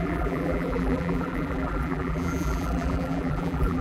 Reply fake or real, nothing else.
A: fake